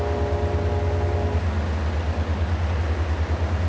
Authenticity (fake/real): real